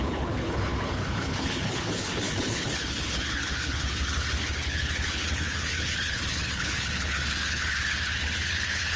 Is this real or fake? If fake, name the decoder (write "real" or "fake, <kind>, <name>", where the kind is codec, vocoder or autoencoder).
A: fake, codec, HILCodec